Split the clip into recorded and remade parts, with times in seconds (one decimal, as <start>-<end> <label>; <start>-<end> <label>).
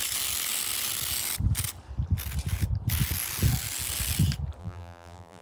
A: 0.0-4.6 recorded; 4.6-5.4 remade